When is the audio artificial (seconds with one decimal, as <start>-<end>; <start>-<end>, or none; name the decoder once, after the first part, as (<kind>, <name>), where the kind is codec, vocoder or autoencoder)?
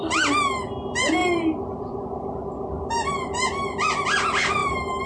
1.2-2.0 (vocoder, BigVGAN v2); 4.6-5.1